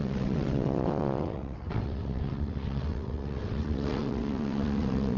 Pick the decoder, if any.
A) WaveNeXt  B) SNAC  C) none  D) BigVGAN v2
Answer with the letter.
A